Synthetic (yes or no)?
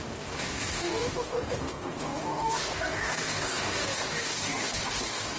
yes